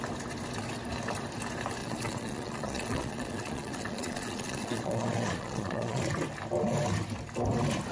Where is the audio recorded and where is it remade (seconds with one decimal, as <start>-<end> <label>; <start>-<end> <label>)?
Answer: 0.0-1.8 recorded; 1.8-6.0 remade; 6.0-7.9 recorded